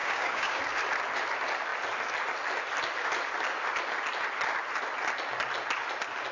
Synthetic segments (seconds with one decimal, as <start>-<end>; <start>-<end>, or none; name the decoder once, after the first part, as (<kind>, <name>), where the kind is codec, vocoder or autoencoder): 0.0-0.6 (codec, DAC)